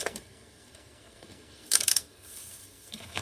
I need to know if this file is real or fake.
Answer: fake